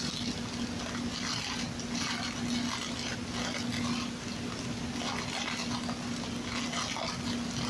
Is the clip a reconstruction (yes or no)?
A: no